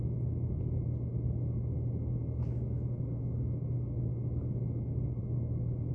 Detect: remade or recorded recorded